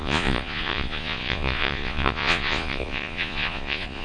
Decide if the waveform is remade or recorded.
remade